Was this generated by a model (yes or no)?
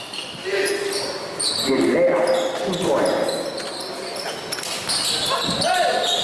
no